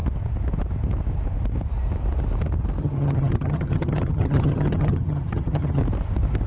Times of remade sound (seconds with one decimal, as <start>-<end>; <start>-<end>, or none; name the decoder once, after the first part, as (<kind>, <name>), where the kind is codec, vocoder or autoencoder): 2.8-5.8 (vocoder, HiFi-GAN)